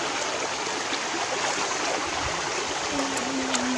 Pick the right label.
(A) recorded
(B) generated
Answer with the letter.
A